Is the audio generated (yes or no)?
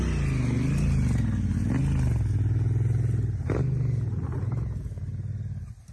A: no